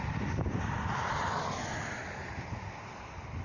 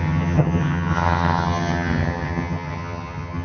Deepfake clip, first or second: second